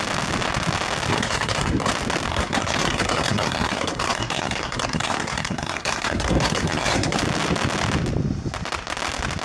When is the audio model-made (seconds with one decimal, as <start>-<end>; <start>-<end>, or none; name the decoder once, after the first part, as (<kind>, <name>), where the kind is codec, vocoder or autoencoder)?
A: 1.1-1.9 (codec, SNAC); 2.3-7.2